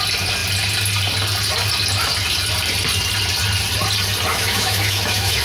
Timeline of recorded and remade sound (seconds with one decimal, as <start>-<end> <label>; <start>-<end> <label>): 0.0-4.3 recorded; 4.3-5.4 remade